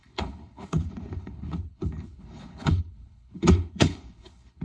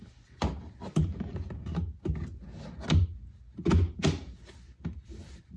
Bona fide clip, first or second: second